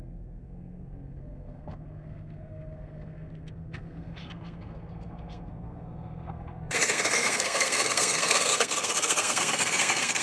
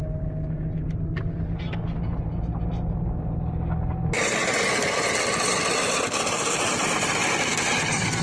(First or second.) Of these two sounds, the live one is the second